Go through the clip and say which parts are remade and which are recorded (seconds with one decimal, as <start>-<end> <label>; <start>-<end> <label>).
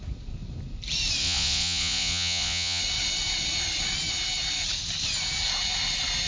0.0-1.2 recorded; 1.2-2.8 remade; 2.8-6.3 recorded